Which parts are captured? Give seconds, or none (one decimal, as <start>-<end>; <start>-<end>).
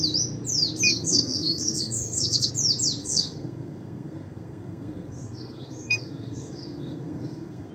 0.0-0.9; 2.5-3.0